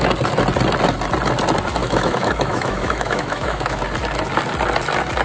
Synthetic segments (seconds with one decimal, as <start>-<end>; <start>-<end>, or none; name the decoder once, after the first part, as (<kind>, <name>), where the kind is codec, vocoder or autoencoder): 1.8-3.8 (autoencoder, DAC-VAE)